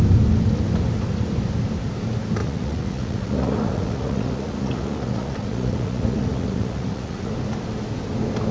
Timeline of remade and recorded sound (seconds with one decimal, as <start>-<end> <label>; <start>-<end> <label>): 0.0-2.4 recorded; 2.4-7.3 remade; 7.3-8.5 recorded